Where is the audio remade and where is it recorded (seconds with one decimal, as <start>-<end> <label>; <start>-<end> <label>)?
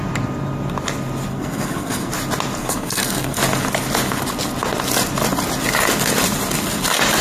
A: 0.0-1.3 recorded; 1.3-2.1 remade; 2.1-2.6 recorded; 2.6-3.4 remade; 3.4-7.2 recorded